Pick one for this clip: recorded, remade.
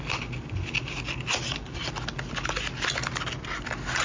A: recorded